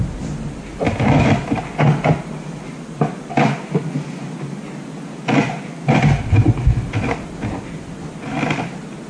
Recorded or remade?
recorded